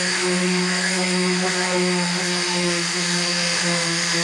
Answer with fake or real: fake